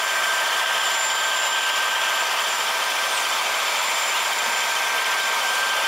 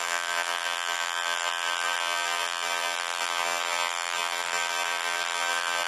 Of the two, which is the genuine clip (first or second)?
first